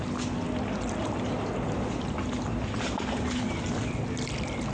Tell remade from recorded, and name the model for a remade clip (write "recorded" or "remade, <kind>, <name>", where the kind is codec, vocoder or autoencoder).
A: recorded